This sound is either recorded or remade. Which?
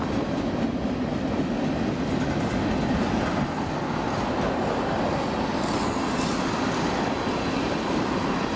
recorded